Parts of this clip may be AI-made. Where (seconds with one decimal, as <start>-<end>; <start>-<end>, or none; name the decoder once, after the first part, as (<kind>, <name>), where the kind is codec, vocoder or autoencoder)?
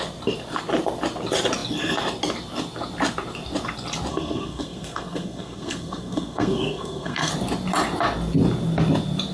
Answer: 4.1-7.3 (codec, SNAC)